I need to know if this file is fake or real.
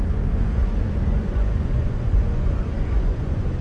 fake